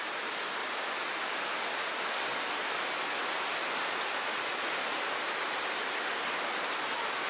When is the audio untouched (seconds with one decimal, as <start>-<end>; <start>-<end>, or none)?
0.0-7.3